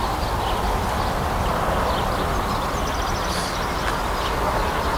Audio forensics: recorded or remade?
recorded